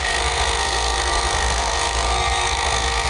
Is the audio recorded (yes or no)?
no